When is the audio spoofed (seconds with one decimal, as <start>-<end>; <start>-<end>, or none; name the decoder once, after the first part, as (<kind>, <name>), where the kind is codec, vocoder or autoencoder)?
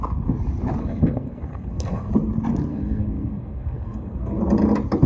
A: 0.8-2.1 (codec, SNAC); 2.7-4.4